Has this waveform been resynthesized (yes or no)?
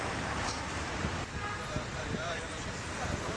yes